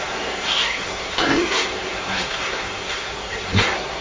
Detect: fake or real fake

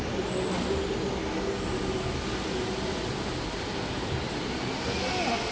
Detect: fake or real real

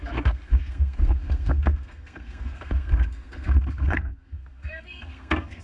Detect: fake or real fake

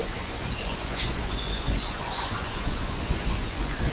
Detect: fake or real fake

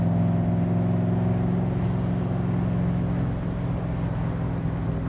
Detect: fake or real real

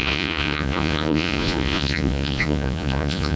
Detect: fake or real fake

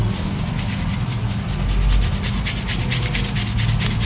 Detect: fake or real real